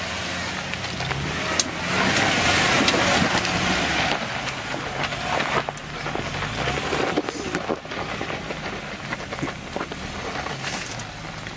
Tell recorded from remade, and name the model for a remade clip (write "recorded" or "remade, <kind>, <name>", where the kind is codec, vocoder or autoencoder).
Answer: recorded